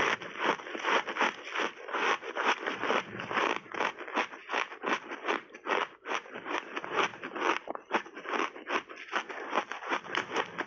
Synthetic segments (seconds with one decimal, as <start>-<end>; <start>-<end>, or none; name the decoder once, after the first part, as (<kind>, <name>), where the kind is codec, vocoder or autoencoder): none